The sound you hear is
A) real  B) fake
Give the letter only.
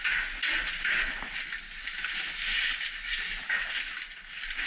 A